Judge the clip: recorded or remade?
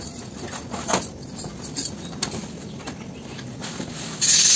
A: recorded